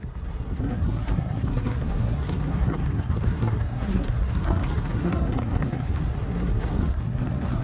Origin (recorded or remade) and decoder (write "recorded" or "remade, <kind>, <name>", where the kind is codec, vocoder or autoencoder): remade, codec, SNAC